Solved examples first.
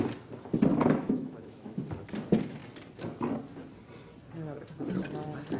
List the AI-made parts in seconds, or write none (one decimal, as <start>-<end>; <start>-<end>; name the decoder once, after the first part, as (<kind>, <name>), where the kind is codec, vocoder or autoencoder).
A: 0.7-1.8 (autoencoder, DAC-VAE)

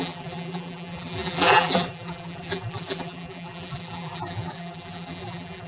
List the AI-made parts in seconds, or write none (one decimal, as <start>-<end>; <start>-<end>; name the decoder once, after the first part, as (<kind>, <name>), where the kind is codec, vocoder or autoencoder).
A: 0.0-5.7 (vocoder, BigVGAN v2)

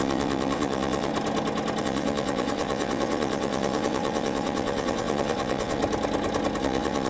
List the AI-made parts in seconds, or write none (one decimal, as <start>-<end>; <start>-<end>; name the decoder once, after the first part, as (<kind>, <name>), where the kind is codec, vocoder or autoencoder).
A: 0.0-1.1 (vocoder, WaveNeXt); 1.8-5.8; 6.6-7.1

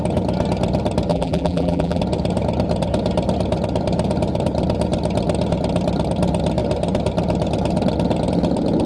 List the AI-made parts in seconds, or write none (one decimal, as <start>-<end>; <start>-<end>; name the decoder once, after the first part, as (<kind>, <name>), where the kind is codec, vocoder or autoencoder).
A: 1.1-2.0 (vocoder, BigVGAN v2)